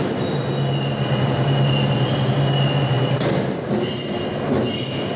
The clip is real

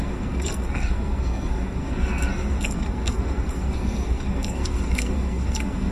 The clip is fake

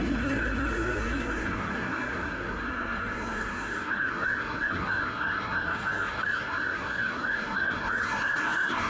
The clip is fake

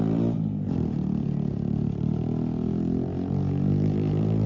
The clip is real